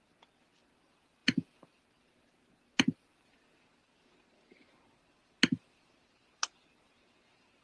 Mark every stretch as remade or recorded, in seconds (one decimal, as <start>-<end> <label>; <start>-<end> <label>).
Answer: 0.0-7.6 recorded